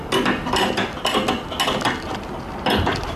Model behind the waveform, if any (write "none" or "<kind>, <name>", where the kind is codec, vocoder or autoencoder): none